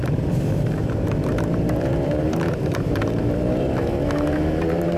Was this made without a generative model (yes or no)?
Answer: no